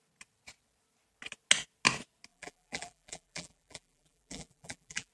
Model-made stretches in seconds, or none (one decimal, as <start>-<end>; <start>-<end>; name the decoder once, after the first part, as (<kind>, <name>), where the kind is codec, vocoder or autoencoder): 2.3-5.1 (vocoder, BigVGAN v2)